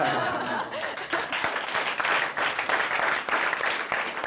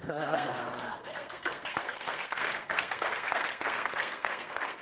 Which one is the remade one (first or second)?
second